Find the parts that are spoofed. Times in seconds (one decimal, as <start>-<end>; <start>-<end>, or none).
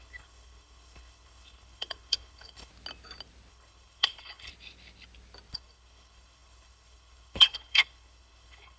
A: 0.0-2.7; 3.5-4.5; 5.5-8.8